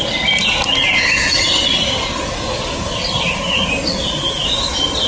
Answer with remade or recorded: recorded